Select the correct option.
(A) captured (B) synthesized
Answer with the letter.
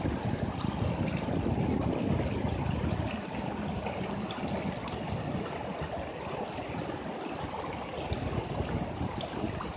A